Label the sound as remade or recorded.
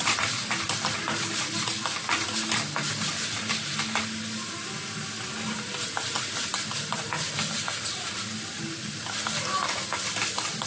recorded